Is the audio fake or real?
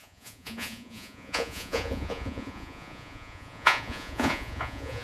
fake